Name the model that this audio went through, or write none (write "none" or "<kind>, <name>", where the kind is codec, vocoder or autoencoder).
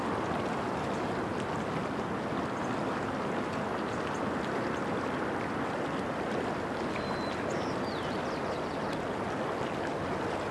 none